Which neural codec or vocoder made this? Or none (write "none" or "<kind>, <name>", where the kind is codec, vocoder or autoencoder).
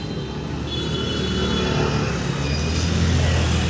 none